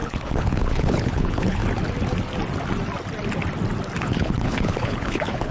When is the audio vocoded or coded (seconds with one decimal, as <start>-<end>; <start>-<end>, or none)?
0.0-1.6; 4.0-5.5